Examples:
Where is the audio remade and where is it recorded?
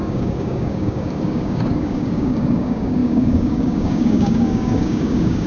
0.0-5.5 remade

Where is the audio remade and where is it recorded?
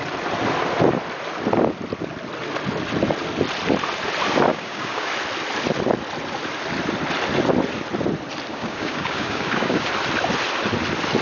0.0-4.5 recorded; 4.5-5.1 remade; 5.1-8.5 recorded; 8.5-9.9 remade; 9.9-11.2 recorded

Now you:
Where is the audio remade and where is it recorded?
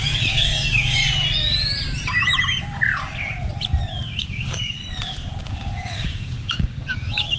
0.0-1.0 remade; 1.0-4.2 recorded; 4.2-4.8 remade; 4.8-5.5 recorded; 5.5-7.4 remade